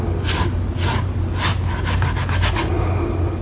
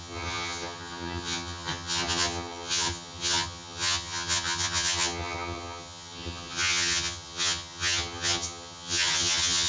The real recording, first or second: first